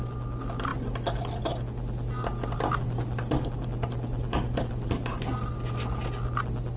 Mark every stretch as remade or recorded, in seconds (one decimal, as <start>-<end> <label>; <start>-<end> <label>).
0.0-6.8 recorded